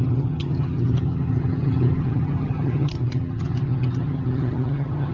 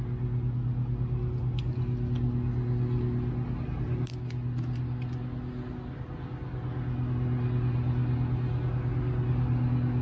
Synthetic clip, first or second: first